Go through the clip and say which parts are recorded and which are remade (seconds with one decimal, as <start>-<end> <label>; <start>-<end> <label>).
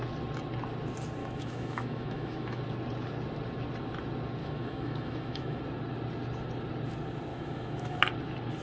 0.0-1.2 recorded; 1.2-2.6 remade; 2.6-4.4 recorded; 4.4-5.6 remade; 5.6-7.3 recorded; 7.3-8.0 remade; 8.0-8.6 recorded